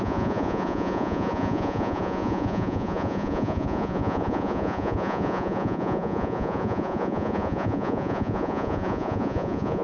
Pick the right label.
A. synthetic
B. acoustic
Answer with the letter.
A